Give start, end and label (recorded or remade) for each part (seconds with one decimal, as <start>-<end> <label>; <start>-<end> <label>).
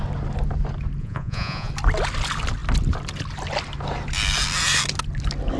0.0-1.0 recorded; 1.0-1.7 remade; 1.7-5.6 recorded